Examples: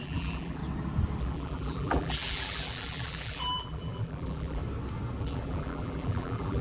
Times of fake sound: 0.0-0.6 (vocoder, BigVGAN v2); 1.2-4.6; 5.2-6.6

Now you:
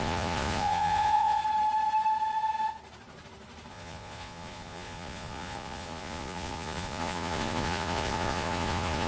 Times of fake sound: 0.0-1.4 (vocoder, Vocos); 3.7-9.1

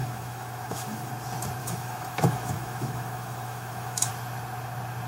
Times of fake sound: 0.0-1.1 (autoencoder, DAC-VAE); 1.6-4.1

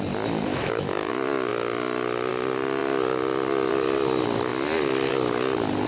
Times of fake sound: 0.5-1.1 (autoencoder, DAC-VAE)

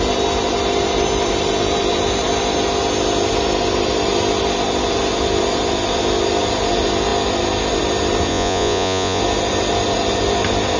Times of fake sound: 8.3-9.2 (vocoder, Vocos)

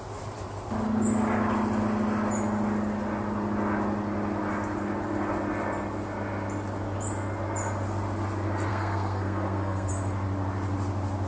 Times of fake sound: 8.7-9.9 (codec, SNAC)